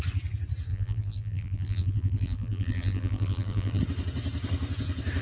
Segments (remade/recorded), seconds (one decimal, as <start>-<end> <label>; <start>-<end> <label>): 0.0-0.7 recorded; 0.7-3.8 remade; 3.8-5.2 recorded